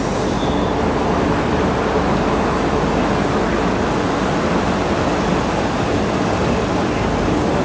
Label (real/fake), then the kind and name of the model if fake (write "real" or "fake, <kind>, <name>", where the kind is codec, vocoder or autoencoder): real